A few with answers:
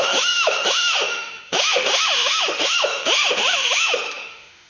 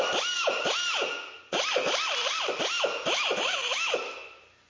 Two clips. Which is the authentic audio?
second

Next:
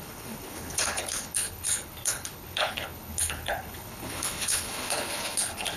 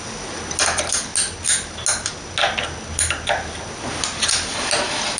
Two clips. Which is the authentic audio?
second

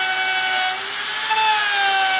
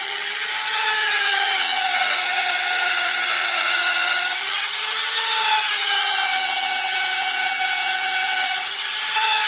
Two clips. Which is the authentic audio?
first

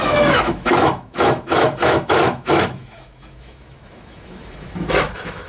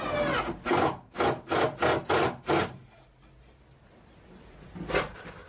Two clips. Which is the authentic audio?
second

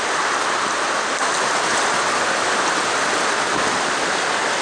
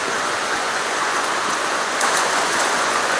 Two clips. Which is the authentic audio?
first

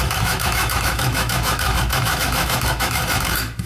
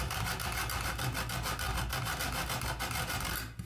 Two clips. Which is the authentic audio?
second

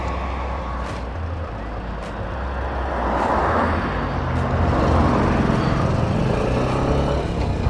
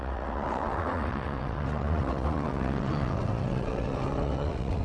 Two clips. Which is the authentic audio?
first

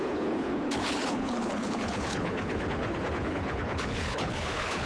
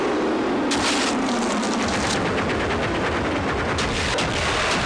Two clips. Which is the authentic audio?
second